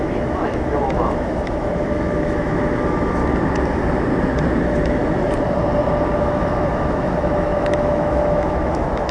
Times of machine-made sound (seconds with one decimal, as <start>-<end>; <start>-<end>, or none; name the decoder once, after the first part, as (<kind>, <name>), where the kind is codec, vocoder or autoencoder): 0.0-3.2 (autoencoder, DAC-VAE); 4.6-5.0; 6.1-9.1